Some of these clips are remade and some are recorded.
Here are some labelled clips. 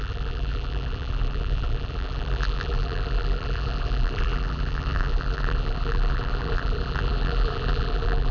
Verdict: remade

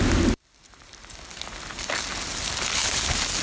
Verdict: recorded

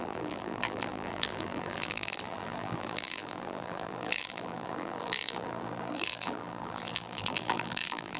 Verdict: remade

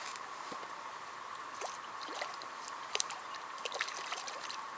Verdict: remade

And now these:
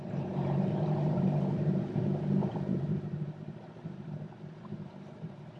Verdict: remade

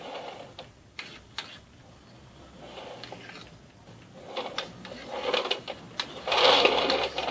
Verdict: recorded